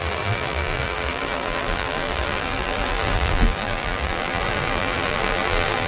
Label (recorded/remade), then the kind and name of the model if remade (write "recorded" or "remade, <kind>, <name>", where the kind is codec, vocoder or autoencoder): remade, vocoder, BigVGAN v2